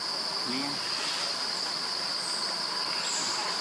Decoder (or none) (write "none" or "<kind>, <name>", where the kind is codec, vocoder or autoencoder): none